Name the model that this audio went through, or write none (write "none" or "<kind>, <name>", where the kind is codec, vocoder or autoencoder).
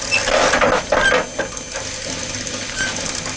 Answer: none